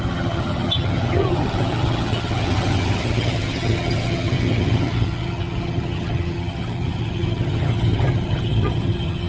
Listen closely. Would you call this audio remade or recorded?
remade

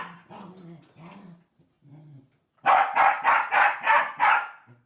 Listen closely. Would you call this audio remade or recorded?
recorded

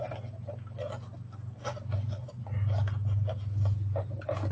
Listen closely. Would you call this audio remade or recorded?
recorded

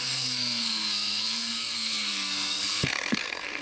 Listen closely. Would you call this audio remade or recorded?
remade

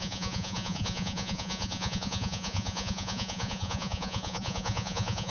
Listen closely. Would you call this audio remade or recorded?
remade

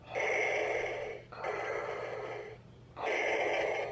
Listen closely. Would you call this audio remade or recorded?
recorded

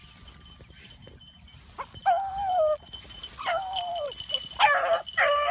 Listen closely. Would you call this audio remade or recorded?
recorded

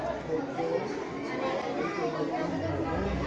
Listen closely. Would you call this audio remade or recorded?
recorded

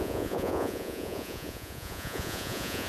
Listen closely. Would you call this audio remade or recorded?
remade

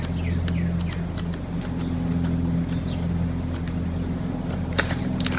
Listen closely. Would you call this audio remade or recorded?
recorded